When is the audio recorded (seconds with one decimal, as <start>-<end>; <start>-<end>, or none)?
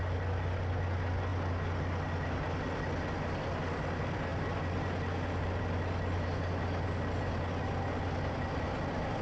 0.0-9.2